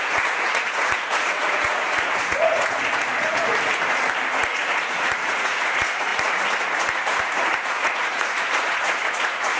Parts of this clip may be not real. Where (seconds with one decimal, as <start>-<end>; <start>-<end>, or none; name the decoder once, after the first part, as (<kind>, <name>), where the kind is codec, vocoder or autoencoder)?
0.0-3.5 (vocoder, Vocos); 4.4-9.6